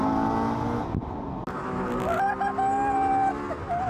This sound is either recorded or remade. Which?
recorded